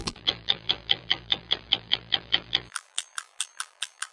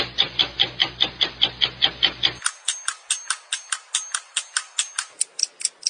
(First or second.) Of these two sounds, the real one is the second